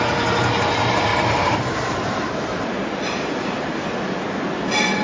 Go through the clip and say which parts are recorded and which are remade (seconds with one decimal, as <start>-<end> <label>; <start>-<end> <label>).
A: 0.0-1.1 recorded; 1.1-4.1 remade; 4.1-5.0 recorded